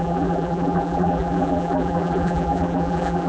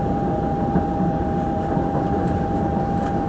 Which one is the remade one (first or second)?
first